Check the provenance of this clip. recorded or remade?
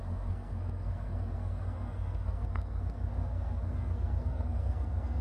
remade